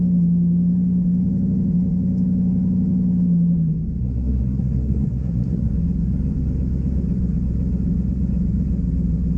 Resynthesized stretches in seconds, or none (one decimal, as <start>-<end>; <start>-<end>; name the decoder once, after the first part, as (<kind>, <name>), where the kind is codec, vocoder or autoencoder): 4.0-5.7 (codec, SNAC)